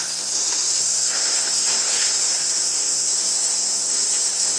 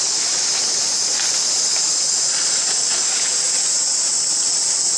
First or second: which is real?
second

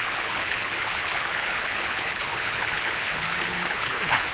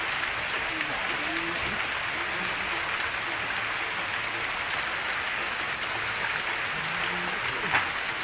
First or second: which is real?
second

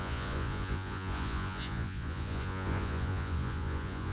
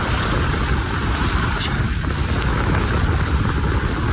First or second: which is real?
second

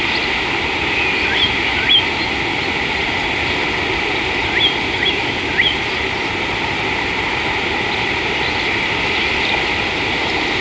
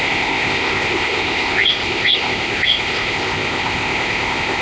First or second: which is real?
first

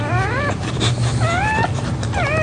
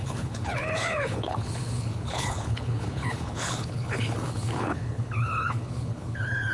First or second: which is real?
first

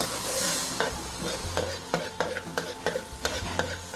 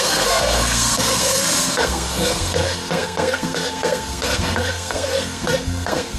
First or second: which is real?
first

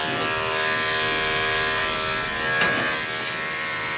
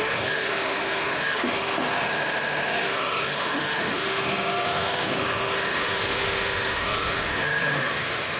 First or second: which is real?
first